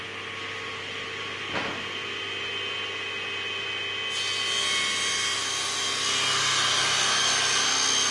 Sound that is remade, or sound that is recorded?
recorded